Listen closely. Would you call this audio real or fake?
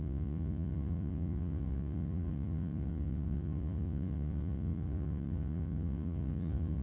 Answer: fake